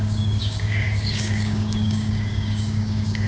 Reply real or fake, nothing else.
fake